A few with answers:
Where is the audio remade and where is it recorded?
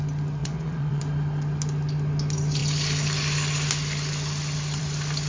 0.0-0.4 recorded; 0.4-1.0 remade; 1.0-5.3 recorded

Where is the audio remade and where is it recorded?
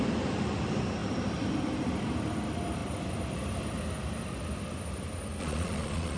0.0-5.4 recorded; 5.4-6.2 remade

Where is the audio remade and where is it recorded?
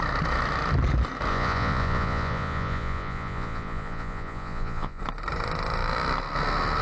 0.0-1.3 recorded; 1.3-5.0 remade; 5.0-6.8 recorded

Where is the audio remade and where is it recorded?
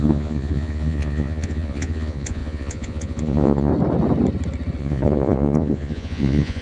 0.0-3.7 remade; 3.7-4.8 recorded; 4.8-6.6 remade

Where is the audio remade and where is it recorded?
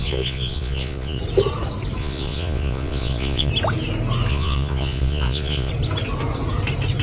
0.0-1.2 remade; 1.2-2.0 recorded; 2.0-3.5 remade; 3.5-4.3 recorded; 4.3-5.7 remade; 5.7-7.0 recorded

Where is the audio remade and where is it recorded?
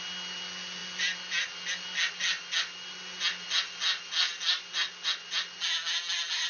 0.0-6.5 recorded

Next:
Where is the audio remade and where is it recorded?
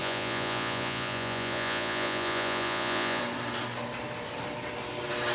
0.0-3.2 remade; 3.2-5.3 recorded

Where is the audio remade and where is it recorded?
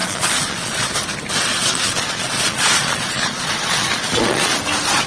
0.0-0.9 remade; 0.9-1.5 recorded; 1.5-4.6 remade; 4.6-5.1 recorded